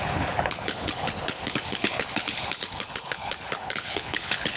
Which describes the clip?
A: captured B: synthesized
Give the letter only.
B